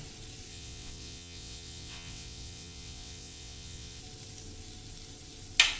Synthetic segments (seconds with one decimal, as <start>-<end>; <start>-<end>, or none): 0.5-4.0